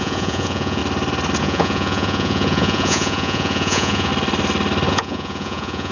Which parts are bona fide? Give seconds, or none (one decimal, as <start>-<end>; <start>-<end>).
0.8-1.4; 4.1-4.9